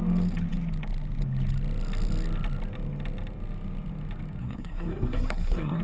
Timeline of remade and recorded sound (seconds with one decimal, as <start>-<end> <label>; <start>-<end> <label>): 0.0-4.4 recorded; 4.4-5.8 remade